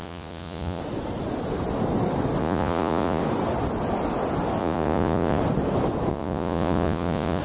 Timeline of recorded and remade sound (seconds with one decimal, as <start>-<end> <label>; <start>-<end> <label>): 0.0-0.8 remade; 0.8-2.4 recorded; 2.4-3.2 remade; 3.2-4.6 recorded; 4.6-5.4 remade; 5.4-6.1 recorded; 6.1-7.4 remade